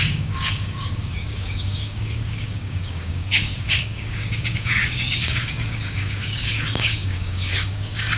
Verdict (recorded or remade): remade